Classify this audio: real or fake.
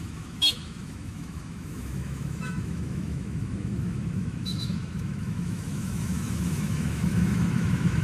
fake